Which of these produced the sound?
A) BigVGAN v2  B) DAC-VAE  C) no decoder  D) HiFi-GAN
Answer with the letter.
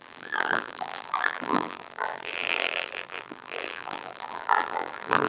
A